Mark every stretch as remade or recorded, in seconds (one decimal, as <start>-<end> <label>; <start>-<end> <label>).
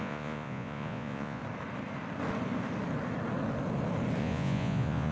0.0-1.4 remade; 1.4-4.2 recorded; 4.2-5.1 remade